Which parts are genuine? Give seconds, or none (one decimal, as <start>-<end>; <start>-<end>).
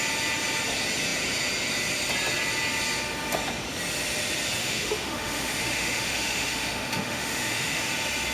0.0-4.6; 7.9-8.3